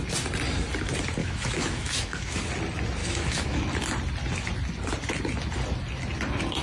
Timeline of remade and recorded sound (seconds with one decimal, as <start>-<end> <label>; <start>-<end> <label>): 0.0-1.2 recorded; 1.2-2.5 remade; 2.5-3.0 recorded; 3.0-3.6 remade; 3.6-6.6 recorded